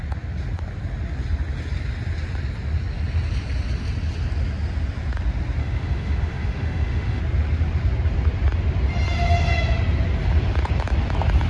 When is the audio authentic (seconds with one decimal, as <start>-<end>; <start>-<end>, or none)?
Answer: 0.0-5.6; 7.2-11.5